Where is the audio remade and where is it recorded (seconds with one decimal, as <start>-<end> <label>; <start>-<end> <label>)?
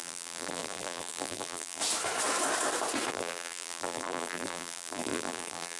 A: 0.0-1.8 remade; 1.8-3.1 recorded; 3.1-5.8 remade